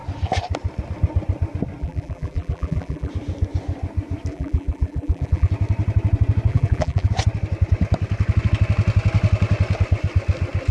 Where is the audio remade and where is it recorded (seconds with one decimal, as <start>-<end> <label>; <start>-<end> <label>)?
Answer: 0.0-1.8 recorded; 1.8-3.1 remade; 3.1-4.3 recorded; 4.3-5.5 remade; 5.5-6.5 recorded; 6.5-7.1 remade; 7.1-10.7 recorded